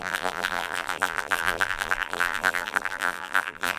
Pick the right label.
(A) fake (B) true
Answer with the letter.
A